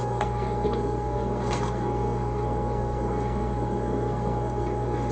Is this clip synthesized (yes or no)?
yes